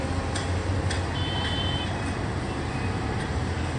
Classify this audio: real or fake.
fake